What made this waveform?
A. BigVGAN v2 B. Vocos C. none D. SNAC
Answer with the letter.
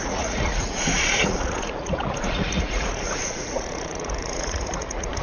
B